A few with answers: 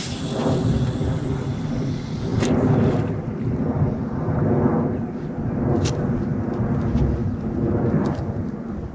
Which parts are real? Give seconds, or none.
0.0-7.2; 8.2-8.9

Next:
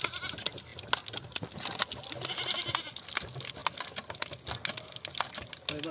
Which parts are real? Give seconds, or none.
0.0-5.9